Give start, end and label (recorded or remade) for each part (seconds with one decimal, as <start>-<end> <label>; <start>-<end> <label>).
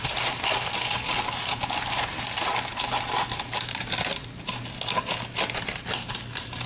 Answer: 0.0-6.7 recorded